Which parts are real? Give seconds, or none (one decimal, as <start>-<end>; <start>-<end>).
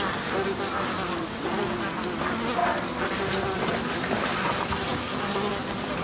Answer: 0.0-6.0